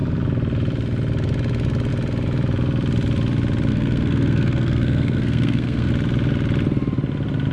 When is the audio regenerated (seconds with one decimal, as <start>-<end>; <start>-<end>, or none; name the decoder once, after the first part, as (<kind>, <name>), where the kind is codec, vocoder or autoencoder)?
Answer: 3.7-5.9 (codec, SNAC)